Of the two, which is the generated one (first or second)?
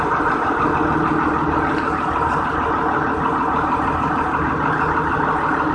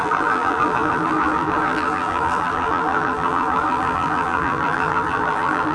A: second